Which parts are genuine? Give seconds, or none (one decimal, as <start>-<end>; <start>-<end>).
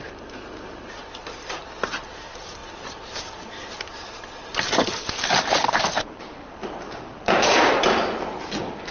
none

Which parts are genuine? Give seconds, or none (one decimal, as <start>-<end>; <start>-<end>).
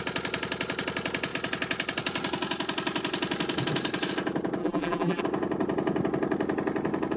0.0-4.6; 5.2-7.2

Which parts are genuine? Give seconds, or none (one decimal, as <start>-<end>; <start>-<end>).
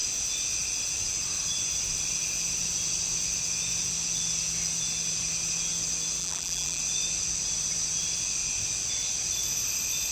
0.0-6.2; 6.8-10.1